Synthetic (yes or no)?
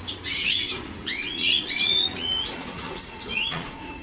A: yes